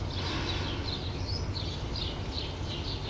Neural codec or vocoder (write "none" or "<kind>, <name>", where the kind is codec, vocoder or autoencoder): none